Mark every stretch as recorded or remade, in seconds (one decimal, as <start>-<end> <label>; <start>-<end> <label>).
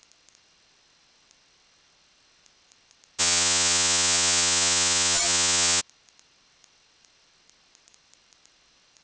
0.0-3.2 recorded; 3.2-5.8 remade; 5.8-9.0 recorded